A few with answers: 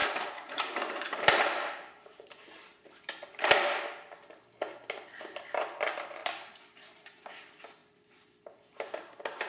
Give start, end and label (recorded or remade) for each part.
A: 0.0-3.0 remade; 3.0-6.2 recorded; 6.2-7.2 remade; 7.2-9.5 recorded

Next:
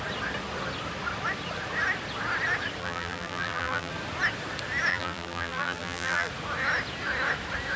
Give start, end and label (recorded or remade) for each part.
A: 0.0-2.8 recorded; 2.8-3.9 remade; 3.9-4.9 recorded; 4.9-6.3 remade; 6.3-7.8 recorded

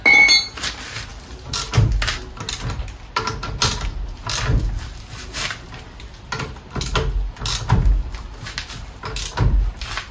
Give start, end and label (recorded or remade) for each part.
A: 0.0-10.1 recorded

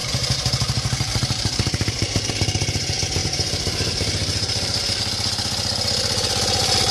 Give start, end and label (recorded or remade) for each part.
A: 0.0-2.3 remade; 2.3-3.2 recorded; 3.2-5.0 remade; 5.0-6.9 recorded

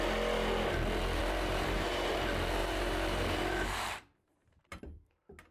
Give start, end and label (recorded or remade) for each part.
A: 0.0-1.2 recorded; 1.2-2.1 remade; 2.1-2.6 recorded; 2.6-4.8 remade; 4.8-5.5 recorded

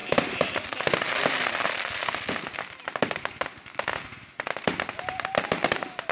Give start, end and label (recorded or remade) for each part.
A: 0.0-2.3 remade; 2.3-6.1 recorded

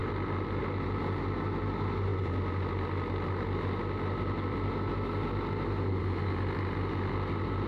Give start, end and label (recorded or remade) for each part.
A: 0.0-7.7 recorded